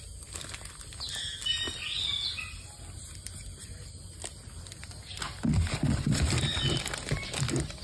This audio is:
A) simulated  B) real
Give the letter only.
B